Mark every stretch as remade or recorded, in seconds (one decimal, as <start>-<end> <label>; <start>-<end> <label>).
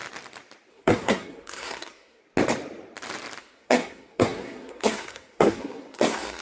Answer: 0.0-0.7 recorded; 0.7-2.2 remade; 2.2-3.4 recorded; 3.4-6.4 remade